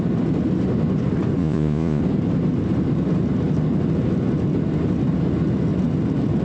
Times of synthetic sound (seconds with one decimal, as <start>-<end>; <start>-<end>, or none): 1.4-2.0